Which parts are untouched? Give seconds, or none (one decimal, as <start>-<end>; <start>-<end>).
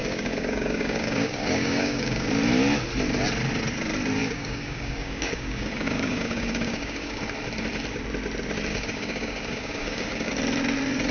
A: 2.3-4.2; 7.2-8.7; 10.3-11.1